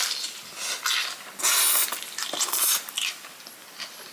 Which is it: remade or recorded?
recorded